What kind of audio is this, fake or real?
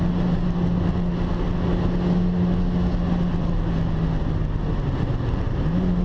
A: real